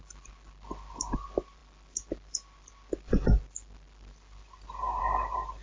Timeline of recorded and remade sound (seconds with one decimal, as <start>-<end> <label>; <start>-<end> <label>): 0.0-5.6 recorded

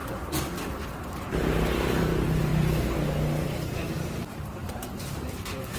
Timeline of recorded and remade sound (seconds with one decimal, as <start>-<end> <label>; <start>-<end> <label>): 0.0-0.7 recorded; 0.7-2.5 remade; 2.5-4.3 recorded; 4.3-5.8 remade

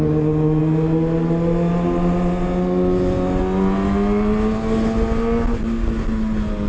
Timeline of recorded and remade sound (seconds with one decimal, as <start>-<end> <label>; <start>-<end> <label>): 0.0-6.7 recorded

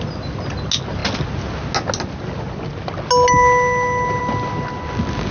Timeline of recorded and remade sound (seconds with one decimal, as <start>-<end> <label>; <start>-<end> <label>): 0.0-5.3 recorded

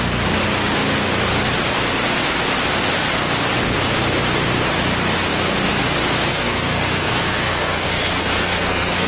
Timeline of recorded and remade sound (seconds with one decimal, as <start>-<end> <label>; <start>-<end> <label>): 0.0-6.3 recorded; 6.3-9.1 remade